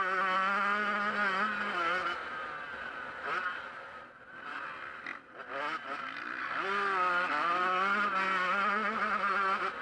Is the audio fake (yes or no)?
no